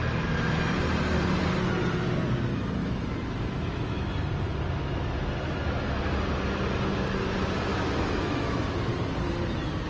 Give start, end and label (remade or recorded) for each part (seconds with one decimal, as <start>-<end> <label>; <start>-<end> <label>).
0.0-2.8 recorded; 2.8-4.1 remade; 4.1-7.7 recorded; 7.7-8.8 remade; 8.8-9.9 recorded